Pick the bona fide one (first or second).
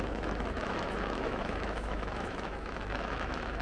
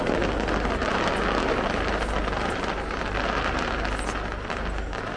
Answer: second